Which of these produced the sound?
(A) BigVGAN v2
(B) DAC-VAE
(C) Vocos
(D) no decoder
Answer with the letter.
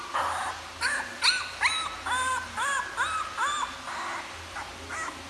D